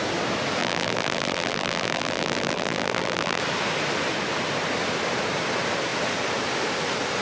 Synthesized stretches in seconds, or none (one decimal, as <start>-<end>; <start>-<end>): 0.6-3.4